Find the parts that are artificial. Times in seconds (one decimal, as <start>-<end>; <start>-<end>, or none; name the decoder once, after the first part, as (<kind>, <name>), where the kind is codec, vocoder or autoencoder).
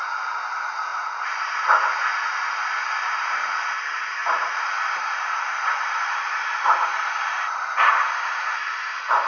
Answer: 0.9-1.5 (vocoder, BigVGAN v2); 4.2-9.3